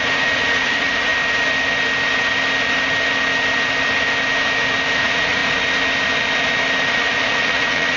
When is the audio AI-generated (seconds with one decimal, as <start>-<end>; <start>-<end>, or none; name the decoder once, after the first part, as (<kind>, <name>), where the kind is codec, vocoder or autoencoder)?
0.0-1.1 (vocoder, Vocos); 5.0-5.4; 6.9-8.0